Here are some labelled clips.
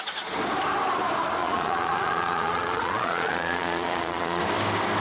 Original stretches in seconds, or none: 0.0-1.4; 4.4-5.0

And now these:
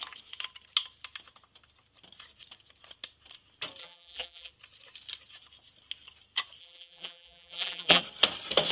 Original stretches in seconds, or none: 0.0-3.8; 4.5-6.6; 8.0-8.7

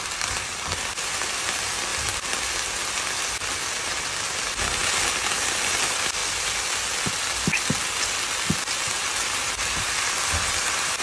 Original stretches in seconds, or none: 1.9-3.8; 4.8-5.8; 6.2-9.8

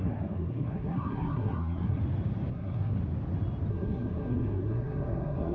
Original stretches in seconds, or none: 2.0-2.5; 3.0-3.7

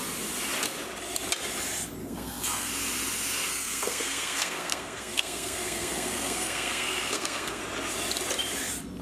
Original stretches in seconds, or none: 0.0-2.0; 2.7-3.5; 7.6-9.0

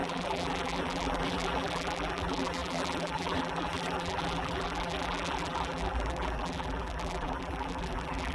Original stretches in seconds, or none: none

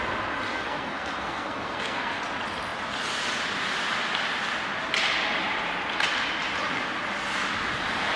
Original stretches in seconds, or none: 0.0-0.5; 2.2-8.2